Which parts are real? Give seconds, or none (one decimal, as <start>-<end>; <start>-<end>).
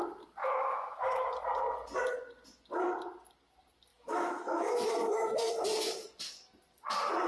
0.0-0.4; 1.3-3.9; 5.5-7.3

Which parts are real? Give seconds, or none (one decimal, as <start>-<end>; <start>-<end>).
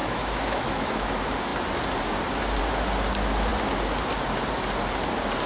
1.1-5.5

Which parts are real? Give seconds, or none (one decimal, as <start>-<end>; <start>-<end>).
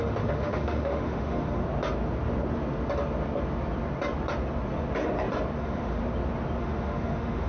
1.6-5.6; 6.0-6.6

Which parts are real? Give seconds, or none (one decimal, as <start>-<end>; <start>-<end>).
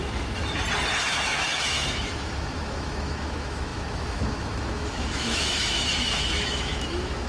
0.4-1.0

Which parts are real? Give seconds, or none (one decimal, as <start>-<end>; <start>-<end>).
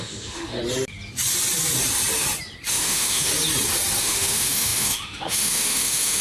0.6-2.7; 3.3-4.0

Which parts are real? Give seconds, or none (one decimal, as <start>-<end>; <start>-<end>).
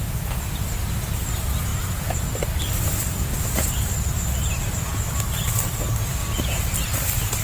0.0-7.4